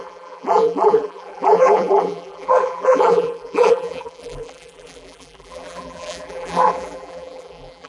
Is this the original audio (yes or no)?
no